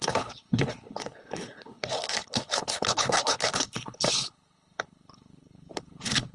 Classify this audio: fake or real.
fake